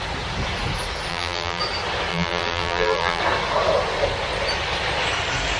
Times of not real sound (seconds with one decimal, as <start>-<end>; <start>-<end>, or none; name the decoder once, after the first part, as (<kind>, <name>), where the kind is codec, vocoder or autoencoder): 1.1-1.6 (vocoder, BigVGAN v2); 2.1-3.2